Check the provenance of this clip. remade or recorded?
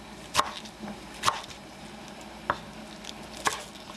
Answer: recorded